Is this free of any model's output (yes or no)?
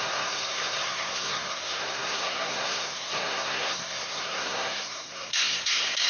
no